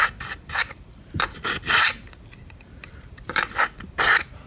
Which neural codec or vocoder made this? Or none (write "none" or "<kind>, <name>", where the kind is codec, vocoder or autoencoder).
vocoder, BigVGAN v2